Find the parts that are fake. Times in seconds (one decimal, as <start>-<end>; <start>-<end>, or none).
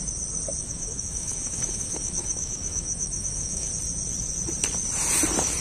0.6-3.7